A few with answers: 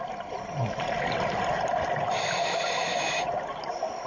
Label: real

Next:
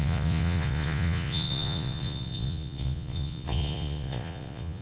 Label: fake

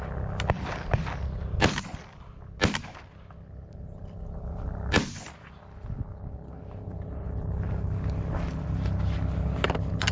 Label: real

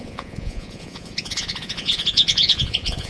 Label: fake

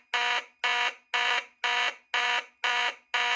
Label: real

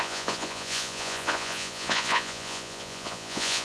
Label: fake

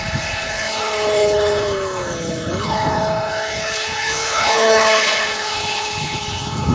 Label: fake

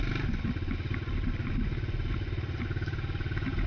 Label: real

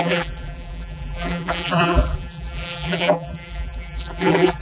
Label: fake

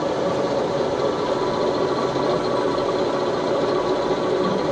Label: real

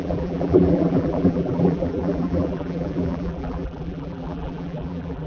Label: fake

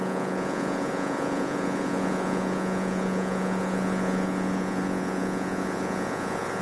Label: fake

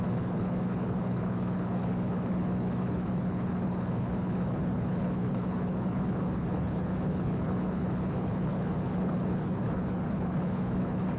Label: fake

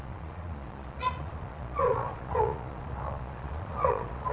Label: fake